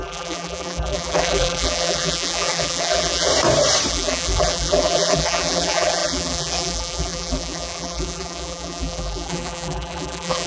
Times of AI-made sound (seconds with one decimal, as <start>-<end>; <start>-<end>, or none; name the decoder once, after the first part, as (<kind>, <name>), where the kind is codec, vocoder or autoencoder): 0.0-3.3 (vocoder, BigVGAN v2); 3.9-10.5